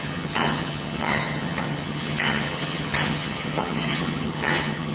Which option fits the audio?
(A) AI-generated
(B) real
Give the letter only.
A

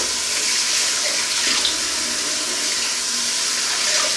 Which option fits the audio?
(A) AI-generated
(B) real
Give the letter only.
B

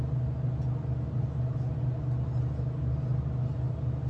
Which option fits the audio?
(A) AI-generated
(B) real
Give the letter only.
B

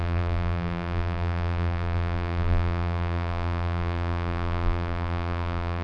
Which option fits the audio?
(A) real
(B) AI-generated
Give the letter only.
B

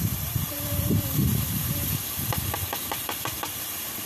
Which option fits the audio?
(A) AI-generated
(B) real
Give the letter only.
A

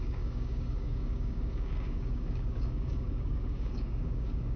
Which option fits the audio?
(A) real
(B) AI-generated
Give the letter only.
B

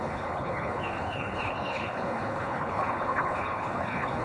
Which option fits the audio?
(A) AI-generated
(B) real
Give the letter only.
A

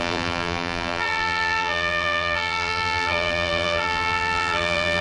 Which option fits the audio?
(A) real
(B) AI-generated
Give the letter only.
B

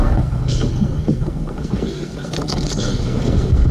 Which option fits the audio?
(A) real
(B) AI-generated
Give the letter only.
B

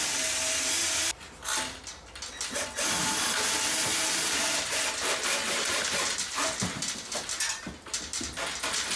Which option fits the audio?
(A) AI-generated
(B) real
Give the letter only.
B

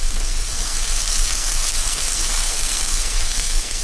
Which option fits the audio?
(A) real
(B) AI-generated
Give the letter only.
B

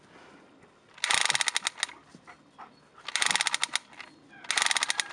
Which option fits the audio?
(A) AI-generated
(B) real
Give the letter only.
B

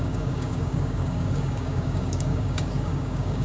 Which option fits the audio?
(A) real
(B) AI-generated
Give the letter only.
B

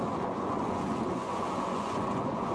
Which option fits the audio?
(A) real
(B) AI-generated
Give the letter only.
B